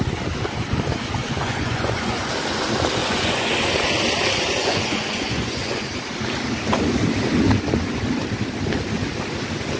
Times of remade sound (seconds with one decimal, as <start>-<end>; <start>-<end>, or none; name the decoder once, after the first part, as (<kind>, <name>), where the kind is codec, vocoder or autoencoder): 1.2-2.3 (vocoder, Vocos); 3.0-3.5; 4.6-5.9